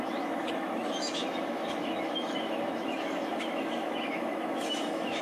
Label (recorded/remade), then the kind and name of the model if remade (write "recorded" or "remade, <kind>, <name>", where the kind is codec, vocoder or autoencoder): remade, autoencoder, DAC-VAE